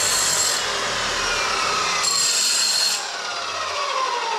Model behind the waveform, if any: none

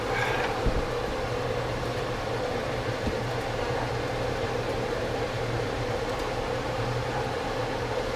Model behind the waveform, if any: vocoder, BigVGAN v2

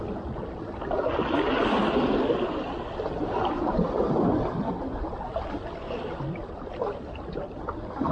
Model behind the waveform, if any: none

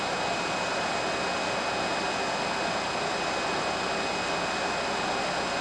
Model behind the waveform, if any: none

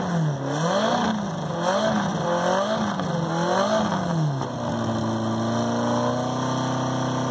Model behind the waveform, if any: none